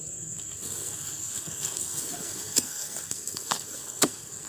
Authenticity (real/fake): fake